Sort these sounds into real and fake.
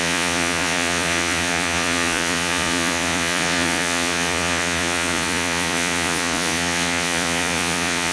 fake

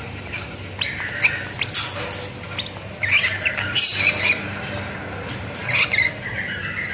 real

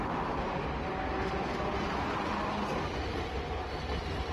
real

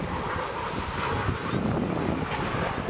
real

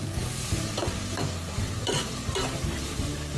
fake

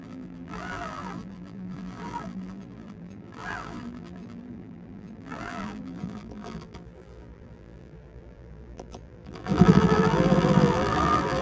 fake